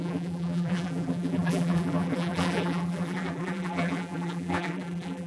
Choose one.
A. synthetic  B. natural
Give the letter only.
A